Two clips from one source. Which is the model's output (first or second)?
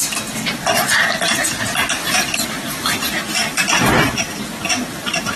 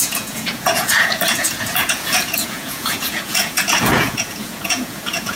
second